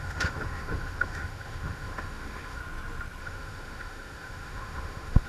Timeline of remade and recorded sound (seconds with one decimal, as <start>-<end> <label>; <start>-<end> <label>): 0.0-2.6 remade; 2.6-3.2 recorded; 3.2-5.3 remade